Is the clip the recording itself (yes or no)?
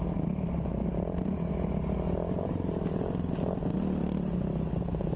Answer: yes